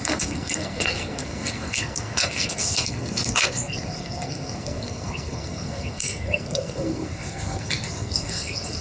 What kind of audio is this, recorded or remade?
remade